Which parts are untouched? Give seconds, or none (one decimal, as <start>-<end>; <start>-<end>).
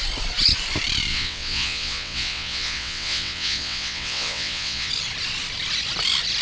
0.0-1.1; 4.9-6.4